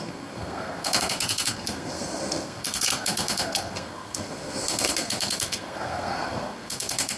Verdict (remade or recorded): remade